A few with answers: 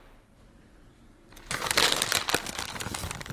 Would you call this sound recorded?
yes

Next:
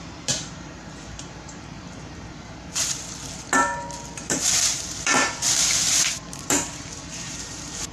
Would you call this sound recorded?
no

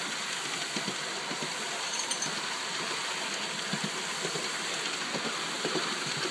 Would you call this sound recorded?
yes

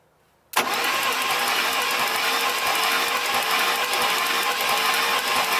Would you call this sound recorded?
yes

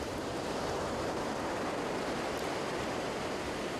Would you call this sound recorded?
yes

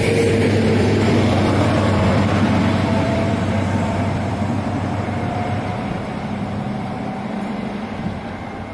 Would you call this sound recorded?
no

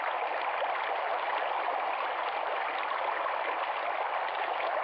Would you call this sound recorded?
yes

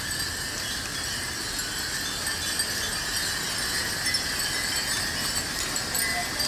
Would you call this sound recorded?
yes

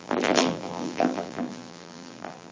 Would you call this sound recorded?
no